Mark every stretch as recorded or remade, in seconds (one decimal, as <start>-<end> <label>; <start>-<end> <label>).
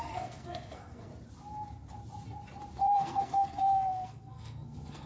0.0-1.1 remade; 1.1-2.8 recorded; 2.8-5.1 remade